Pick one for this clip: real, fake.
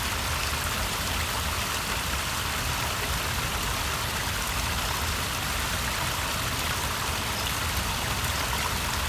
real